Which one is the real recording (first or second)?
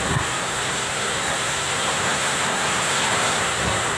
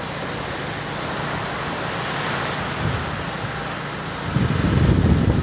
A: second